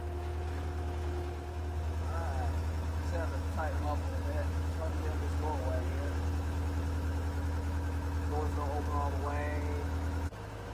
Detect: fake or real fake